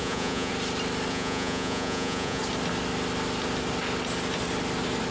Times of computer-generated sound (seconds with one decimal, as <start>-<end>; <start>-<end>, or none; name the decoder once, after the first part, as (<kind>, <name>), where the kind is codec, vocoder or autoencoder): 0.0-0.5 (vocoder, Vocos); 1.1-2.4